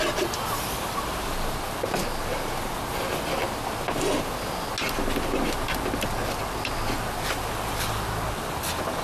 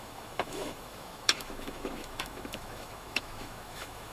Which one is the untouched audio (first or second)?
first